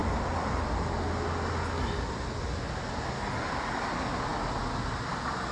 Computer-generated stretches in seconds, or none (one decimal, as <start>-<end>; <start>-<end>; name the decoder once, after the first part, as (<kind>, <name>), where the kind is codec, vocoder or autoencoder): none

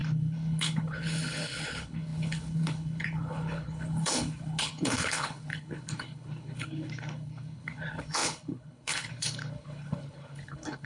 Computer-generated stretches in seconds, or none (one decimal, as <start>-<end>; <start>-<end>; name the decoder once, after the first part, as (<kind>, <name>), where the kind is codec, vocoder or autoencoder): 0.0-10.9 (codec, HILCodec)

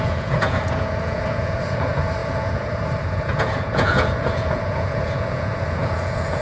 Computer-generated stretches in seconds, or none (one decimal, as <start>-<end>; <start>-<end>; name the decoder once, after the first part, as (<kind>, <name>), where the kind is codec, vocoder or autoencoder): 0.0-6.4 (vocoder, Vocos)

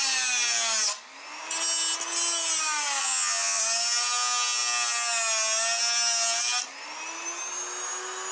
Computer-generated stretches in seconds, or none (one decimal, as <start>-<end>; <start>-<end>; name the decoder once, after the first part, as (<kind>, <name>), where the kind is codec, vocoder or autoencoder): 3.0-3.6 (vocoder, HiFi-GAN)

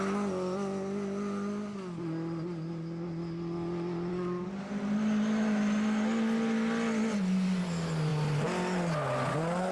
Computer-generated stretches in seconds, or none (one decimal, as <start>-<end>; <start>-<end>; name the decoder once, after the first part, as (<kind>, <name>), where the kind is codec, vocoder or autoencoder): 4.1-4.7 (codec, DAC)

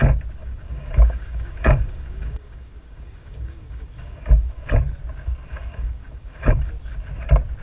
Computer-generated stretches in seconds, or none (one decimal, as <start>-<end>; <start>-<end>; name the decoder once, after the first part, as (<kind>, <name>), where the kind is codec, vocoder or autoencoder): 0.4-4.6 (codec, DAC); 5.5-6.7